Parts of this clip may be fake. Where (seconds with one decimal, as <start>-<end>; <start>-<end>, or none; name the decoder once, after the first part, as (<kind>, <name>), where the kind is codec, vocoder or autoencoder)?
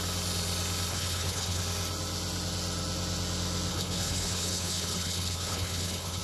0.9-1.6 (codec, HILCodec); 3.7-6.2